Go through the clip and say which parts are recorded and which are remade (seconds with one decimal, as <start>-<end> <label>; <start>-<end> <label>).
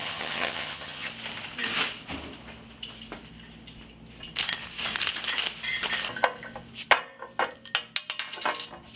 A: 0.0-1.1 remade; 1.1-9.0 recorded